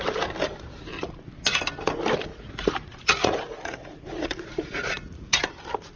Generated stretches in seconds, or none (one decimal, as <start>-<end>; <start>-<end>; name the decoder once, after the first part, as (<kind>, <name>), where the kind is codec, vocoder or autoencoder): 2.3-5.4 (vocoder, Vocos)